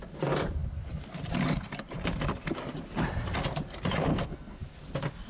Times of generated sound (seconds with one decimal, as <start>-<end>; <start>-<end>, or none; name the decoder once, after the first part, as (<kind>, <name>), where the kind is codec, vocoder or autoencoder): 4.1-4.6 (codec, SNAC)